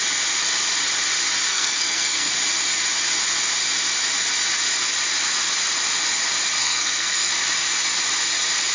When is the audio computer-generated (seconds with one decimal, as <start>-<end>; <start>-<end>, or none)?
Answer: 1.5-2.3; 6.6-7.3